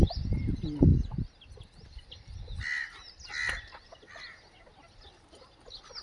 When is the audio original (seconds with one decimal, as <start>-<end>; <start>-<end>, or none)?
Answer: 0.0-6.0